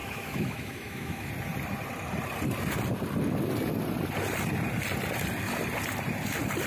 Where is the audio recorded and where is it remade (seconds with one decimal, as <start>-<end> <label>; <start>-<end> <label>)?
0.0-1.3 remade; 1.3-6.7 recorded

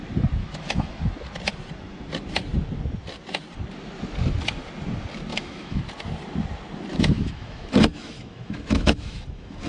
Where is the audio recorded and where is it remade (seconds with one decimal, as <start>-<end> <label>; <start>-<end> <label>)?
0.0-0.4 recorded; 0.4-1.0 remade; 1.0-5.3 recorded; 5.3-5.8 remade; 5.8-6.9 recorded; 6.9-9.7 remade

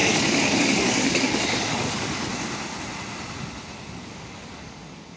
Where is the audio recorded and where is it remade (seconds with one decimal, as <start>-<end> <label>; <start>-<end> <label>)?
0.0-2.3 remade; 2.3-4.0 recorded; 4.0-5.2 remade

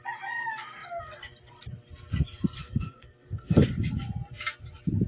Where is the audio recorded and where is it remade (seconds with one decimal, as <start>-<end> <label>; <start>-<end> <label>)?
0.0-2.6 recorded; 2.6-3.7 remade; 3.7-5.1 recorded

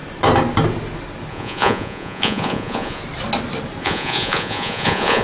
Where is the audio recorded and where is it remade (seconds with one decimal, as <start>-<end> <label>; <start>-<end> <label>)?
0.0-1.3 recorded; 1.3-3.0 remade; 3.0-3.8 recorded; 3.8-5.2 remade

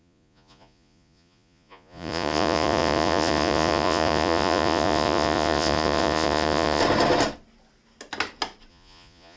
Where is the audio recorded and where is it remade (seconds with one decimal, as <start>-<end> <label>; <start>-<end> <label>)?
0.0-6.8 remade; 6.8-8.7 recorded; 8.7-9.4 remade

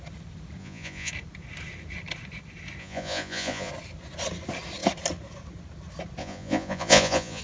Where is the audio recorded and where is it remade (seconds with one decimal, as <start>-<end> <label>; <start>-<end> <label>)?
0.0-0.6 recorded; 0.6-1.1 remade; 1.1-2.8 recorded; 2.8-3.7 remade; 3.7-6.2 recorded; 6.2-7.4 remade

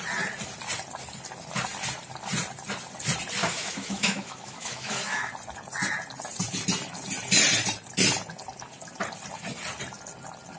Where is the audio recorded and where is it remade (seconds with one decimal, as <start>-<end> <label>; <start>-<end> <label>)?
0.0-3.4 recorded; 3.4-5.3 remade; 5.3-10.6 recorded